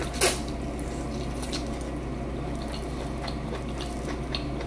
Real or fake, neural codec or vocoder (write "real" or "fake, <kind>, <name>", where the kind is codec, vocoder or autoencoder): real